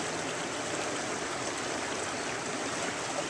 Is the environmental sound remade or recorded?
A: recorded